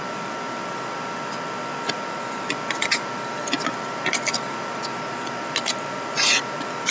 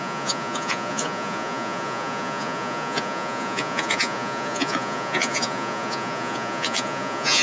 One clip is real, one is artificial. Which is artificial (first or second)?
second